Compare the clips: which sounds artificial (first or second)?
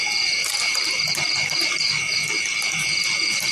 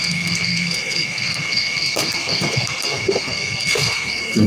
second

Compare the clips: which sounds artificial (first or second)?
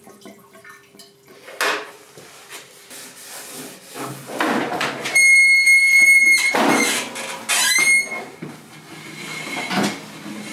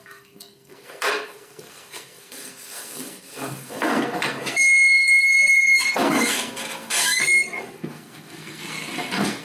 second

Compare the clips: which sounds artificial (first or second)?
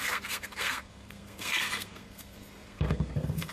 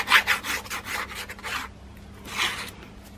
first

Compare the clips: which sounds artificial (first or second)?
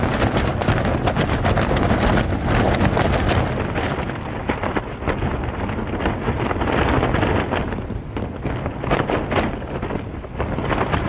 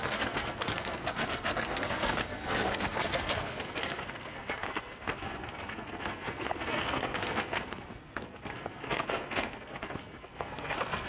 second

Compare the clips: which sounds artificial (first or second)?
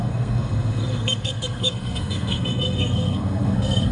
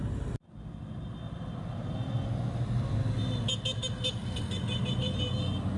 first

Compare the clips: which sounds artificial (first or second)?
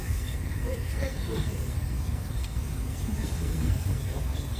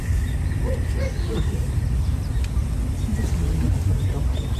first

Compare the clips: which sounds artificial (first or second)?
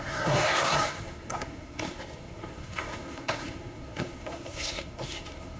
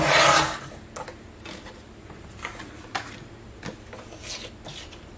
first